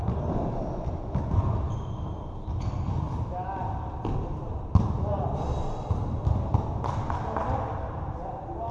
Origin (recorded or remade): recorded